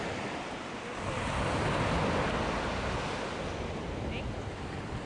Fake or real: real